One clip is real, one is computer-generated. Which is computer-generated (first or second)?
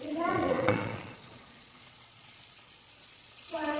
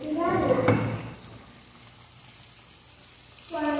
first